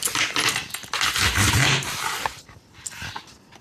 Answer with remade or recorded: recorded